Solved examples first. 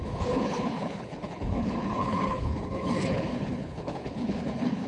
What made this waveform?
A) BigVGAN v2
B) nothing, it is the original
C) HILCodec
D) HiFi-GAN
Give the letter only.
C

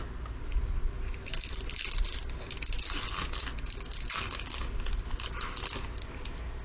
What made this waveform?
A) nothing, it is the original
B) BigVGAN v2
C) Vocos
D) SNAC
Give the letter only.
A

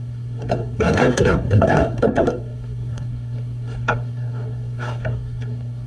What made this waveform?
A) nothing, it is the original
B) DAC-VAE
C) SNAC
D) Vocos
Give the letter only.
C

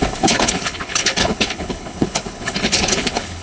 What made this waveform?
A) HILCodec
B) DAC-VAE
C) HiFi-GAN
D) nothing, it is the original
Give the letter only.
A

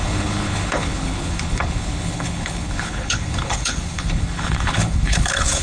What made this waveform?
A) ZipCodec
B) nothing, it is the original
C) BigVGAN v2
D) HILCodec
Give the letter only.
D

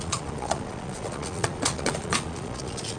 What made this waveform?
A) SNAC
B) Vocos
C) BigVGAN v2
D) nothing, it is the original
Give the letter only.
B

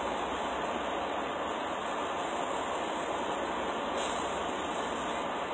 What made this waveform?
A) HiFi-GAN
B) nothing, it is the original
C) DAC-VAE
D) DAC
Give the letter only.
B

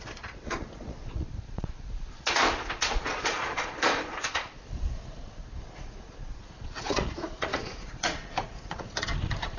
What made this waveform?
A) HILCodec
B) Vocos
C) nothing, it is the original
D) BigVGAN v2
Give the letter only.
B